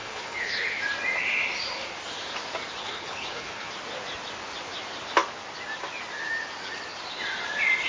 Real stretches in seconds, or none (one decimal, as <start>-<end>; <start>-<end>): 0.8-2.8; 3.7-7.9